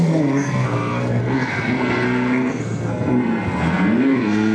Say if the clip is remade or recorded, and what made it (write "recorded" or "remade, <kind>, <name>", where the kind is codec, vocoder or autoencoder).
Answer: remade, codec, SNAC